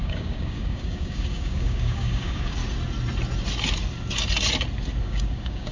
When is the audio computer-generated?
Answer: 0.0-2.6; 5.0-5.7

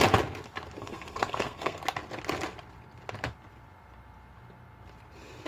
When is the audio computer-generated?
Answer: 0.8-1.8